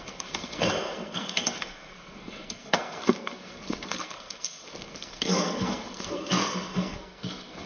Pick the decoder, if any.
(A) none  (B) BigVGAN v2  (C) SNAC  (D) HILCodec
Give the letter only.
C